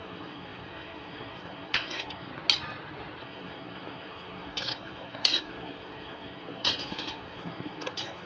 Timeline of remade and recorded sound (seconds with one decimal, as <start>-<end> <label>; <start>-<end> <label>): 0.0-2.3 remade; 2.3-3.2 recorded; 3.2-8.3 remade